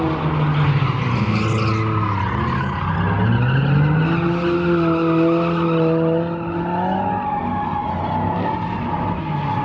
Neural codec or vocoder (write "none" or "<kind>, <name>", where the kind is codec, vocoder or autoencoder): none